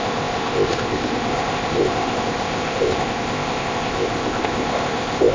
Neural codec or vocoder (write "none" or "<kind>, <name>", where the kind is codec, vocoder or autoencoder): codec, ZipCodec